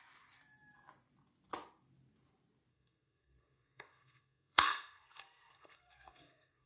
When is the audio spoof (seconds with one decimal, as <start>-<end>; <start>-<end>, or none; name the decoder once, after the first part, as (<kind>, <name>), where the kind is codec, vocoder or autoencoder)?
2.7-6.7 (codec, SNAC)